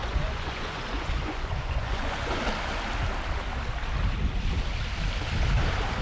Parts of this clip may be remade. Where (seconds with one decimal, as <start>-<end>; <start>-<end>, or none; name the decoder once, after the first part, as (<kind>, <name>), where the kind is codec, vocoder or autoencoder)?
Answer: 0.0-2.4 (vocoder, Vocos)